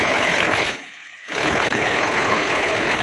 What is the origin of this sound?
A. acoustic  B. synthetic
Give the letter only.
B